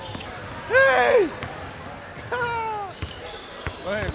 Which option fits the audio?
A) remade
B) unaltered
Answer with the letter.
B